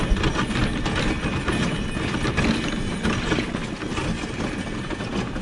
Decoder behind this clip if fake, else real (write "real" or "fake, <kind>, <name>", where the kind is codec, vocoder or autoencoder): real